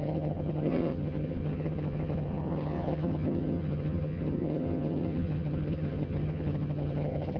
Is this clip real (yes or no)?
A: no